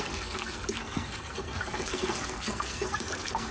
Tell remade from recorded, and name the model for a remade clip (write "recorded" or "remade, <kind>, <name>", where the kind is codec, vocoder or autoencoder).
remade, codec, SNAC